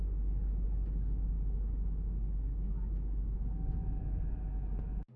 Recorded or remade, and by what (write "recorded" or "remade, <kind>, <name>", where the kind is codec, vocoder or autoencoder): recorded